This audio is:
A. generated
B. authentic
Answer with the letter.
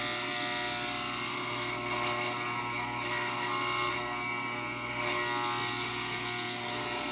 B